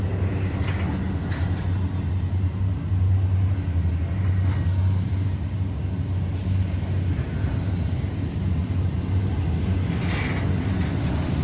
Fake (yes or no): no